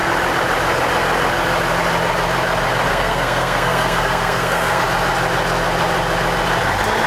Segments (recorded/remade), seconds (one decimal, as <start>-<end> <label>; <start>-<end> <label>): 0.0-2.9 recorded; 2.9-4.8 remade; 4.8-7.1 recorded